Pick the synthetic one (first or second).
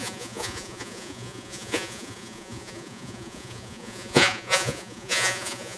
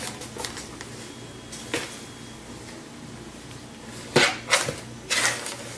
first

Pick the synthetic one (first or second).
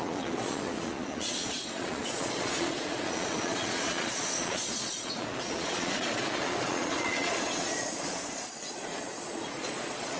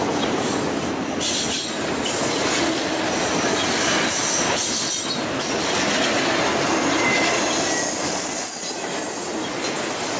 first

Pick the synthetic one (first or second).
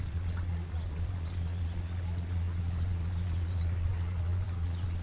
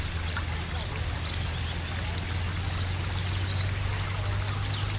first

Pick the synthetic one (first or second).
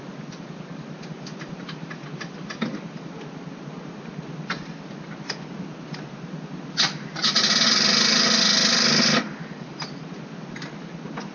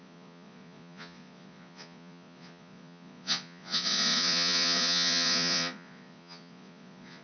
second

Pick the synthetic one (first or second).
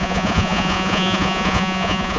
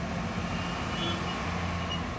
first